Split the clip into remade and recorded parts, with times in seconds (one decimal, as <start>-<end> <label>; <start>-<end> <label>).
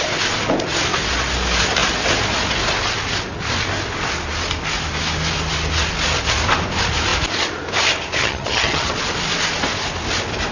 0.0-8.2 recorded; 8.2-8.9 remade; 8.9-10.5 recorded